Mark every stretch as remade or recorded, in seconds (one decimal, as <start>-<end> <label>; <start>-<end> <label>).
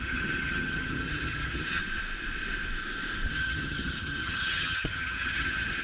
0.0-1.8 remade; 1.8-3.3 recorded; 3.3-5.8 remade